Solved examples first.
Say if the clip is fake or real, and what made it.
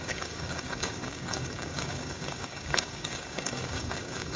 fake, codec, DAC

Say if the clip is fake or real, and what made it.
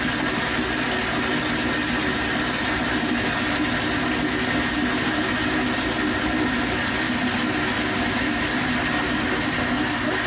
real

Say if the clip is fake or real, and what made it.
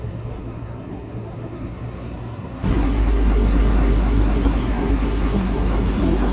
fake, codec, SNAC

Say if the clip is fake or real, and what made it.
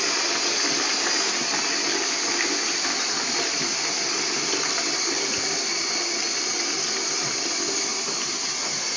real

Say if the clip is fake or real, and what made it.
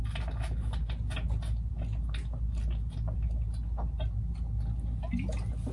real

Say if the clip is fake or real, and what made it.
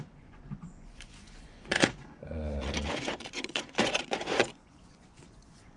fake, vocoder, Vocos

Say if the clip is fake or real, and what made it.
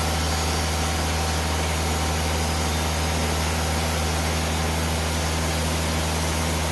real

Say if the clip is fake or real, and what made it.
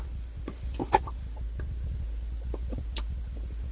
real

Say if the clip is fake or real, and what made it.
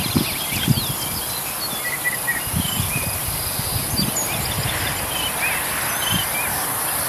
real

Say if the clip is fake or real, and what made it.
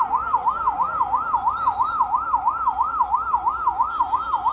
real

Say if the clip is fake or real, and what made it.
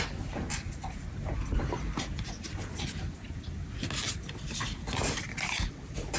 real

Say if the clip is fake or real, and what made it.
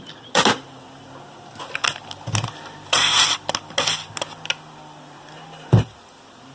real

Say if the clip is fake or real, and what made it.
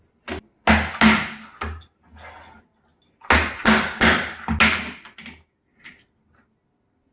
real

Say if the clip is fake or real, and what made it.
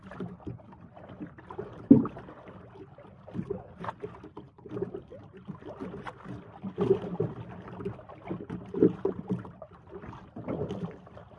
real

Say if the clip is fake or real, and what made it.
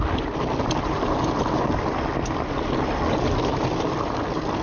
real